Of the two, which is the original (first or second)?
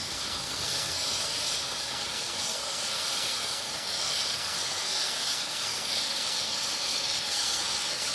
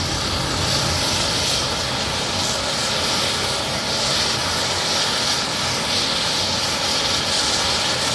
second